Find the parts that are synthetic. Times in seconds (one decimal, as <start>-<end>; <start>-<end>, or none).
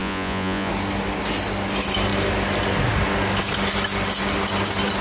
0.0-0.7